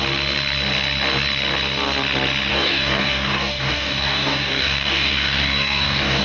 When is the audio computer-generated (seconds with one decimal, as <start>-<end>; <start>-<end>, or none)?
2.5-6.2